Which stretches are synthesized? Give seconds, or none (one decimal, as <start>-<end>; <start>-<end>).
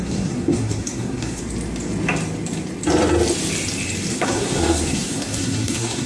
0.0-1.4; 4.1-6.1